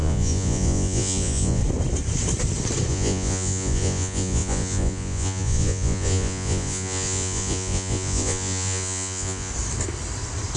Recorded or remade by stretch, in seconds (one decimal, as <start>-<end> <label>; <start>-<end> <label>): 0.0-1.6 remade; 1.6-2.9 recorded; 2.9-9.5 remade; 9.5-10.6 recorded